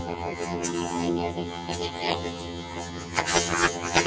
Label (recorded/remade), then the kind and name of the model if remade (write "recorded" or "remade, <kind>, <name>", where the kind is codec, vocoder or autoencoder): remade, vocoder, HiFi-GAN